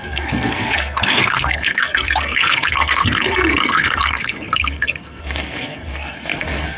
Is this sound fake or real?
fake